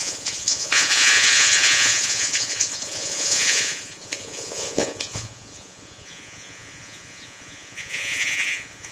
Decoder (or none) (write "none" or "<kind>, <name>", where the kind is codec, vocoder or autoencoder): vocoder, Vocos